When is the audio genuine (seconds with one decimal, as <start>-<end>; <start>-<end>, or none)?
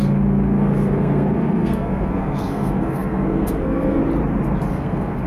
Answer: 4.0-4.7